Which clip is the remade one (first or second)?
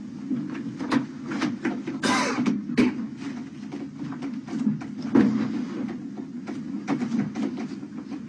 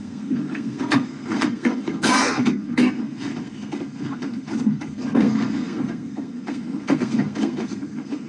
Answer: second